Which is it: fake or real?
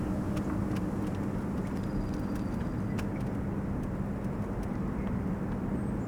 real